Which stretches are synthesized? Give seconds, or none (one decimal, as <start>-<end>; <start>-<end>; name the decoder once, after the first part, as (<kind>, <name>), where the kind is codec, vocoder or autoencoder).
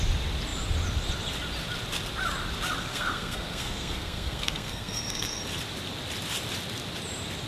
2.9-5.4 (codec, SNAC)